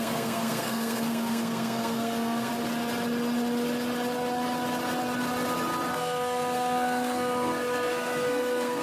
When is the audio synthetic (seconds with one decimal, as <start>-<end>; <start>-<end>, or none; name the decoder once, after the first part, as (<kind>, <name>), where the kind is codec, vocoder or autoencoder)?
0.0-2.5 (codec, SNAC); 5.9-8.8